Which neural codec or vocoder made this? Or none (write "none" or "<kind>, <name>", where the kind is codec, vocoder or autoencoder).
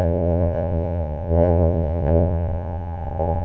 vocoder, Vocos